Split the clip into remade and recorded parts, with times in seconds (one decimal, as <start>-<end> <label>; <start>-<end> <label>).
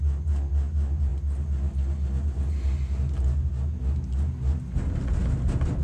0.0-5.8 recorded